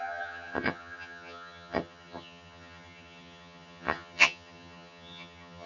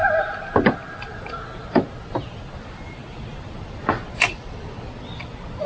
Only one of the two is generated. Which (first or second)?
first